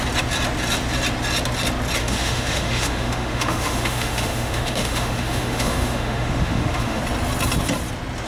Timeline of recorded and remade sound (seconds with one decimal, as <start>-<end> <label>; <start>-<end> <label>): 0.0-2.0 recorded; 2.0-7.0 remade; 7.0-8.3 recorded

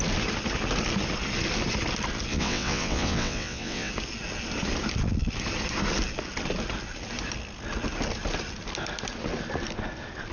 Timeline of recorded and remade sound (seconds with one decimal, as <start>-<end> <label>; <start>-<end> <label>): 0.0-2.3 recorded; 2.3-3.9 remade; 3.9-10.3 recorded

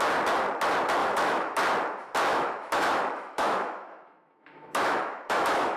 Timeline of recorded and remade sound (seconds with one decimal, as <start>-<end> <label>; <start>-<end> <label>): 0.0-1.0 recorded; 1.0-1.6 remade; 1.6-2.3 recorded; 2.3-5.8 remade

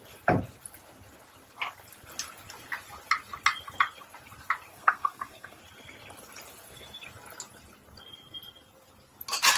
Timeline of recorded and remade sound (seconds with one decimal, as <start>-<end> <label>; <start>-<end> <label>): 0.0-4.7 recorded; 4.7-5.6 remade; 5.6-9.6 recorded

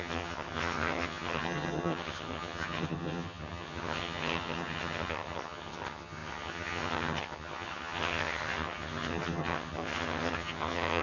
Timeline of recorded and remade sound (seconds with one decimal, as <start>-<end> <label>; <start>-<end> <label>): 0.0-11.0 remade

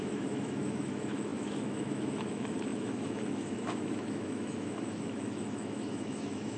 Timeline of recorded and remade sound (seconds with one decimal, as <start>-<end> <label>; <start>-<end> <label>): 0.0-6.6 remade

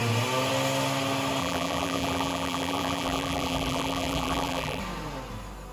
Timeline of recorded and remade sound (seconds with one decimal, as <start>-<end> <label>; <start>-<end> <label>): 0.0-1.4 recorded; 1.4-4.8 remade; 4.8-5.7 recorded

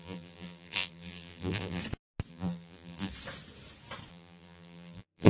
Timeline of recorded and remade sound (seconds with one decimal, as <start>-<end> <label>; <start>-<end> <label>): 0.0-1.8 remade; 1.8-2.3 recorded; 2.3-3.1 remade; 3.1-4.1 recorded; 4.1-5.3 remade